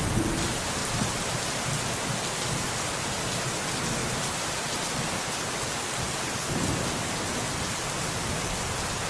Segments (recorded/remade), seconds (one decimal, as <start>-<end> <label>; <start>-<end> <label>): 0.0-9.1 recorded

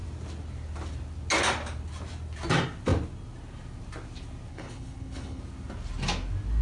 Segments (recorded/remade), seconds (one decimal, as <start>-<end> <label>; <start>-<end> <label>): 0.0-4.5 recorded; 4.5-5.4 remade; 5.4-6.6 recorded

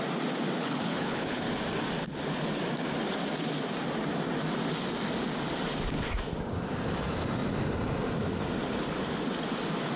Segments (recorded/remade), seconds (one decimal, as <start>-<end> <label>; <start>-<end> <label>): 0.0-0.6 recorded; 0.6-1.4 remade; 1.4-10.0 recorded

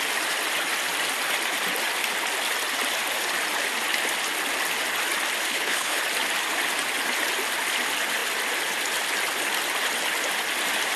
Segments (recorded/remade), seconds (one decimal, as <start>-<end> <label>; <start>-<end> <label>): 0.0-5.5 recorded; 5.5-6.0 remade; 6.0-11.0 recorded

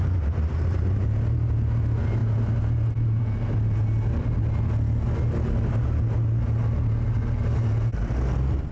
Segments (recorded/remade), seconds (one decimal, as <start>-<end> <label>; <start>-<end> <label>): 0.0-8.7 recorded

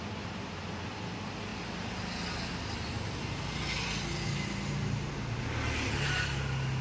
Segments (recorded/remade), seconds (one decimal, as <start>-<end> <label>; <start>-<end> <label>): 0.0-6.8 recorded

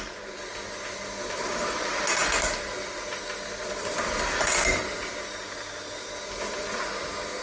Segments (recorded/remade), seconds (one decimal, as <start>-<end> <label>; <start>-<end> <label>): 0.0-7.4 recorded